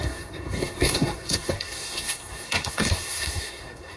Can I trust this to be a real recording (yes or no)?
no